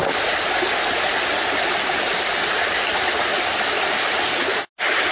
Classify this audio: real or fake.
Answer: real